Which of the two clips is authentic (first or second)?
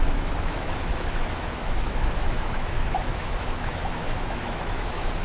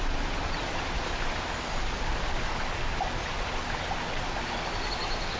second